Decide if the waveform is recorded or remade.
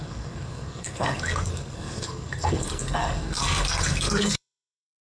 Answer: remade